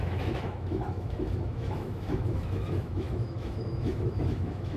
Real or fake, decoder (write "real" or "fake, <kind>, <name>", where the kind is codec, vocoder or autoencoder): fake, autoencoder, DAC-VAE